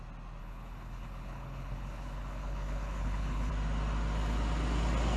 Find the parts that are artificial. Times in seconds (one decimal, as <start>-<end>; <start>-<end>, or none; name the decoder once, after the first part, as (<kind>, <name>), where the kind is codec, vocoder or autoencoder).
0.4-3.5 (codec, HILCodec)